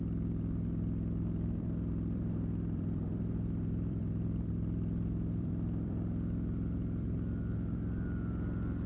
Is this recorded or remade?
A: remade